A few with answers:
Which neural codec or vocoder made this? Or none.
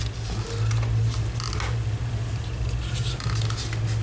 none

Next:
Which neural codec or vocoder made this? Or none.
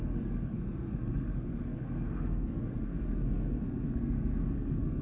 codec, SNAC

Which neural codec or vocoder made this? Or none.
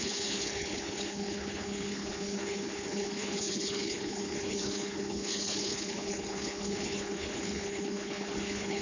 codec, HILCodec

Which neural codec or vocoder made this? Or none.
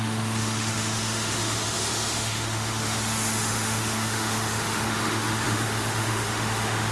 autoencoder, DAC-VAE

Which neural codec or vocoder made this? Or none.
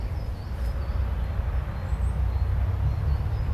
none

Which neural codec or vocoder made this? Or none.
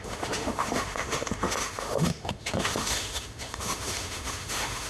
autoencoder, DAC-VAE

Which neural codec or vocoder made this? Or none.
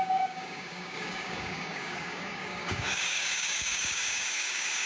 codec, DAC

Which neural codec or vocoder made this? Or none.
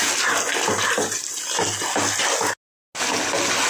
none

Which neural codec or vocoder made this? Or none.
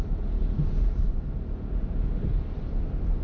vocoder, BigVGAN v2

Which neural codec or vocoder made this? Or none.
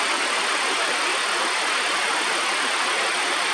none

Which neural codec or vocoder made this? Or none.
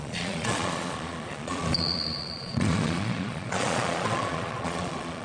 vocoder, Vocos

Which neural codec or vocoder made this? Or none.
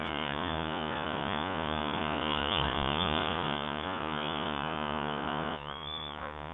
vocoder, Vocos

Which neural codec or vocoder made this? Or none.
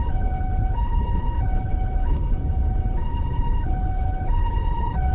codec, HILCodec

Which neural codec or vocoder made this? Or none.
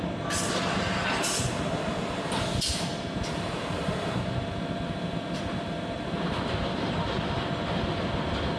none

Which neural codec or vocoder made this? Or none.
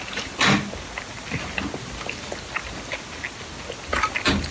none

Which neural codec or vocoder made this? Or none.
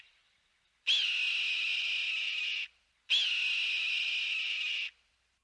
none